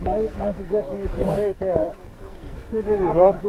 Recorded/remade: remade